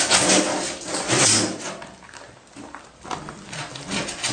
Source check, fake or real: real